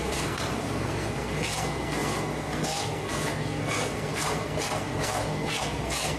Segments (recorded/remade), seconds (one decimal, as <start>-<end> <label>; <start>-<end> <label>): 0.0-6.2 remade